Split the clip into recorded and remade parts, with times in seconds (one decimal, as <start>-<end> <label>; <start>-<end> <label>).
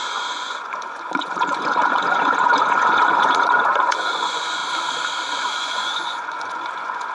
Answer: 0.0-4.6 remade; 4.6-5.5 recorded; 5.5-7.1 remade